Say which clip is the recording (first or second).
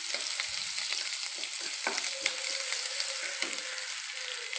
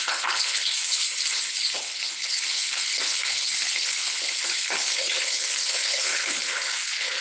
first